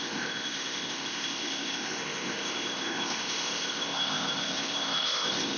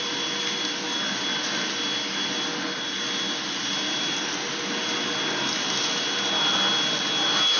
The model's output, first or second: first